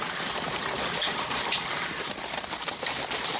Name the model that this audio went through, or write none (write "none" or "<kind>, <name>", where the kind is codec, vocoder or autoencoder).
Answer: vocoder, BigVGAN v2